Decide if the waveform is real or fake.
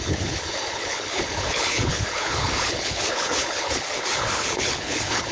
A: fake